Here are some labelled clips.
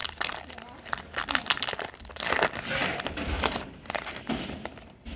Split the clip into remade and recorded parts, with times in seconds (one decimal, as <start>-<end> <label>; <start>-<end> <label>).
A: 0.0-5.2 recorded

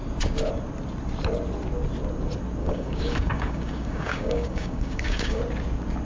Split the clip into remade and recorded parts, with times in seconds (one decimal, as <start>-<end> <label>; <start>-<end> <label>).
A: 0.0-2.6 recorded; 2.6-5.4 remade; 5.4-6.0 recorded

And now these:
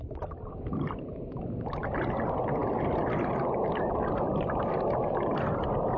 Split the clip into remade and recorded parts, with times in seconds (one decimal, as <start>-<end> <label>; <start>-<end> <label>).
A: 0.0-6.0 recorded

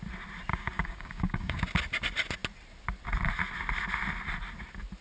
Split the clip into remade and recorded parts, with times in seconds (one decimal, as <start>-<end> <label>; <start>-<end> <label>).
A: 0.0-0.5 recorded; 0.5-1.6 remade; 1.6-5.0 recorded

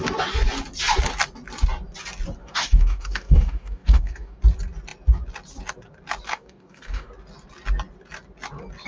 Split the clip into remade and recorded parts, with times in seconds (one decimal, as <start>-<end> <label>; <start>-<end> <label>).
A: 0.0-2.4 recorded; 2.4-4.4 remade; 4.4-6.3 recorded; 6.3-7.1 remade; 7.1-8.9 recorded

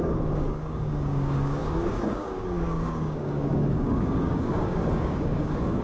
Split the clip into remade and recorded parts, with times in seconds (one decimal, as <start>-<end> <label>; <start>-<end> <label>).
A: 0.0-5.8 remade